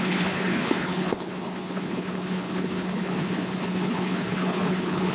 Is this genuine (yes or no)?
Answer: no